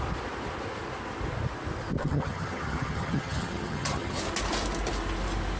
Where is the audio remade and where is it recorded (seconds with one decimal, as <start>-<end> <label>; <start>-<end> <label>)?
0.0-2.0 recorded; 2.0-4.2 remade; 4.2-5.6 recorded